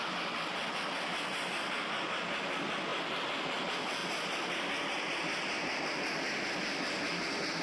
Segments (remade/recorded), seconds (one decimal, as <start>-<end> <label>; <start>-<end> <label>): 0.0-7.6 recorded